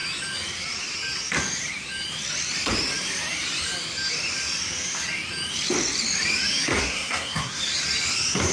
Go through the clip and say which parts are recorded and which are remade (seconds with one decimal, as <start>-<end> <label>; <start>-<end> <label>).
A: 0.0-6.8 recorded; 6.8-7.6 remade; 7.6-8.5 recorded